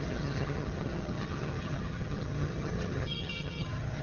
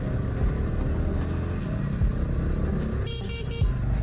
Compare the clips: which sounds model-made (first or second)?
first